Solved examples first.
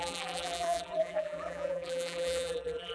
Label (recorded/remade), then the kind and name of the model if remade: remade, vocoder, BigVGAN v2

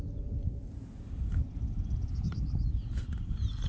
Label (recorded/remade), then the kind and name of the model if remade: recorded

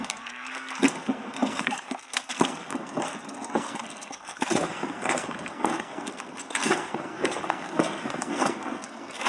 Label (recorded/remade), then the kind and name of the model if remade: remade, codec, SNAC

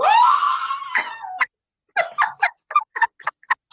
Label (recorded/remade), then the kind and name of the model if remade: recorded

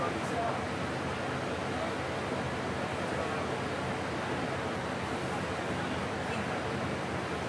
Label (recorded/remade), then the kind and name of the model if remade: recorded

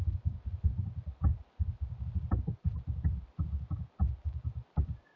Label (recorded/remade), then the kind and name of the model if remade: recorded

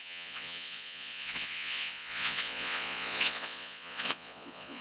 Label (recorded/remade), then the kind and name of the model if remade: remade, vocoder, Vocos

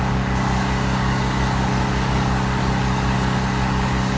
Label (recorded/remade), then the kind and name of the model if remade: remade, codec, DAC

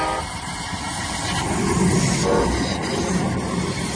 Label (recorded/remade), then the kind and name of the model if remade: recorded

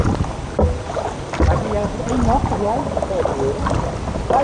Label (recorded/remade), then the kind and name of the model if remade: recorded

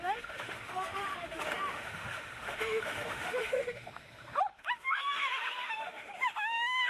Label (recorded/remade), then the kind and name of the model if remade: remade, autoencoder, DAC-VAE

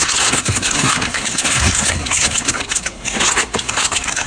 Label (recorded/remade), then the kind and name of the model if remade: remade, codec, SNAC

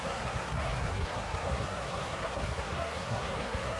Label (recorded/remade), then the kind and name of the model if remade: remade, codec, SNAC